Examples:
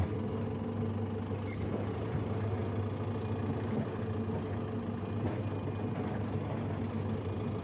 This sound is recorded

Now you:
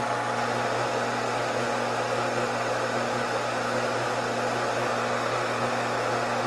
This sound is recorded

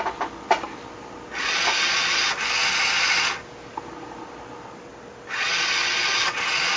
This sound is recorded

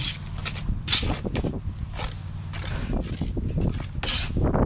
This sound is recorded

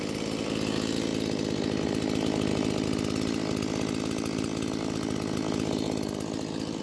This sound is recorded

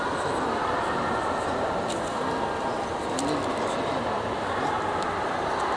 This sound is recorded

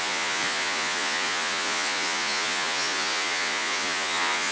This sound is remade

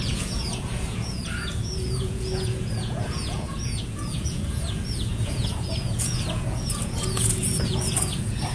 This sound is remade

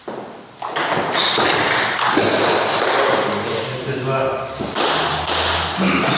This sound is recorded